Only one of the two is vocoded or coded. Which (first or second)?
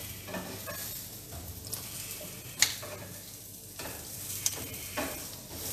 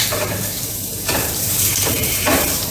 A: second